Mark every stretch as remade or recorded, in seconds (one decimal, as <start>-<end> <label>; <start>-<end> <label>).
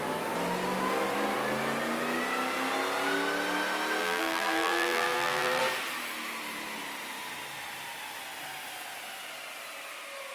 0.0-4.0 recorded; 4.0-5.6 remade; 5.6-10.3 recorded